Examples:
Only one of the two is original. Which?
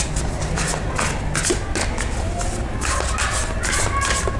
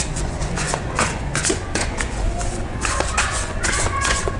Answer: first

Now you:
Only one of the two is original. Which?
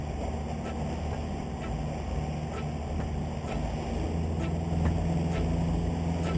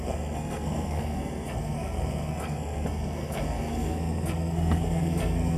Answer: first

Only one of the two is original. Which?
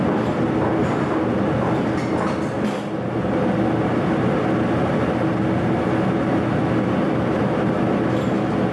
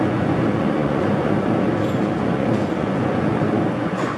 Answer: first